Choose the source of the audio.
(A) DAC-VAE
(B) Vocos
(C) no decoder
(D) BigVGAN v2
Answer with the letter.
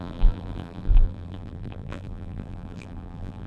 D